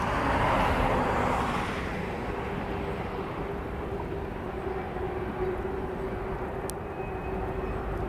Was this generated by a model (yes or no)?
no